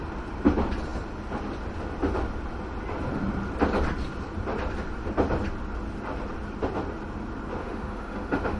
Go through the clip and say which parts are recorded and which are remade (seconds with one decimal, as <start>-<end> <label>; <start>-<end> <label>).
0.0-7.6 recorded; 7.6-8.6 remade